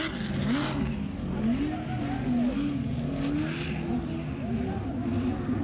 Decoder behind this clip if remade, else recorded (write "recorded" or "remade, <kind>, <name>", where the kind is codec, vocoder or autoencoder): recorded